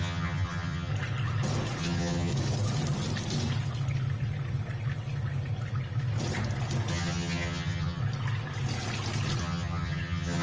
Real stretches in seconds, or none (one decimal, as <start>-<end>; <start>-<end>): 0.9-1.8; 2.3-6.9; 8.0-9.4

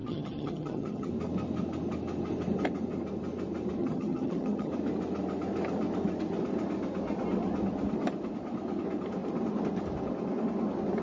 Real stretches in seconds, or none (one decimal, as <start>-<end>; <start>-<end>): 1.1-3.8; 4.7-11.0